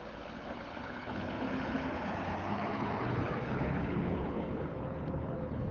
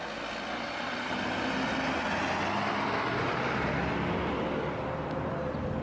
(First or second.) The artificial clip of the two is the first